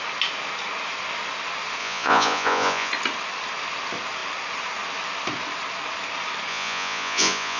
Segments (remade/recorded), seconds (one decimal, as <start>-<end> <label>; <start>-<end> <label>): 0.0-1.8 recorded; 1.8-2.9 remade; 2.9-6.5 recorded; 6.5-7.6 remade